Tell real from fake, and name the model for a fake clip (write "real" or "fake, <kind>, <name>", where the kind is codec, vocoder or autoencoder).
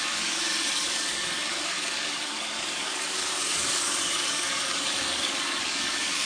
fake, codec, DAC